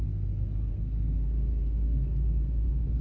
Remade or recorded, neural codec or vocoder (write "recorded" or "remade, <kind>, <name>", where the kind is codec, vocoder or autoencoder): remade, codec, SNAC